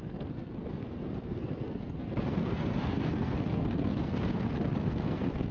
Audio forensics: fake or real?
fake